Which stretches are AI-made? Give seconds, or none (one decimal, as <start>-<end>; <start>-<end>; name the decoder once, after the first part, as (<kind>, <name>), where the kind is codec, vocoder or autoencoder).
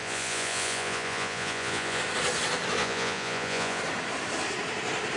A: 0.0-2.0 (vocoder, Vocos); 2.8-3.8